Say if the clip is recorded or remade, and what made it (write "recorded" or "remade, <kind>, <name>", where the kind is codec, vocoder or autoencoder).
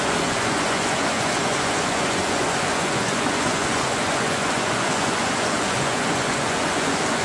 remade, vocoder, Vocos